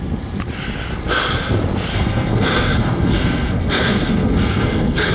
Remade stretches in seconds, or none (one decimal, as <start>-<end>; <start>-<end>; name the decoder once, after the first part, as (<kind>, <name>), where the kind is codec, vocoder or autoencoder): 1.9-5.1 (codec, SNAC)

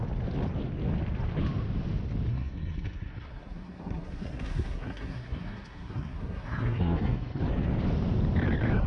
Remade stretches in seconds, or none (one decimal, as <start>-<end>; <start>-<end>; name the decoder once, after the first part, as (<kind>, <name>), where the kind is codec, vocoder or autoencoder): 2.3-7.4 (codec, SNAC)

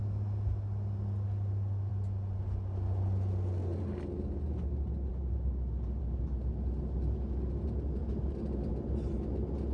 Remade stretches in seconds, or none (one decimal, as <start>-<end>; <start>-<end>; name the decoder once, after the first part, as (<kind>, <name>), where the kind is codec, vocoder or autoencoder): none

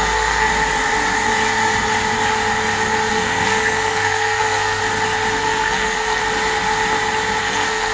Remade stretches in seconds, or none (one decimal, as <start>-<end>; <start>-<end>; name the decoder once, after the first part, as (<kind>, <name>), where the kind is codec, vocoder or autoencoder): 0.0-0.5 (codec, SNAC); 3.1-4.8; 5.4-6.2; 7.4-7.9

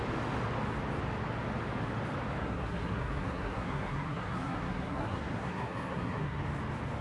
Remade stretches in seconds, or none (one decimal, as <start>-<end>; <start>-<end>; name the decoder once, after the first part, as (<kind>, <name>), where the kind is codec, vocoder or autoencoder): 2.4-6.4 (codec, SNAC)

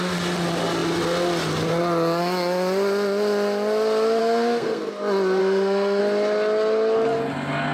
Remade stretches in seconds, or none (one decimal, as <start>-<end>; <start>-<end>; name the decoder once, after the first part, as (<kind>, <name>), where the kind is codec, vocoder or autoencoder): 4.2-4.8 (codec, SNAC); 5.4-6.0

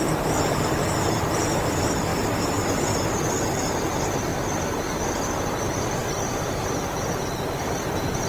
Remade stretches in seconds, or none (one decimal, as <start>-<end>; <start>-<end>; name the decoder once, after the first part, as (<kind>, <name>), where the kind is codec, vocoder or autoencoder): none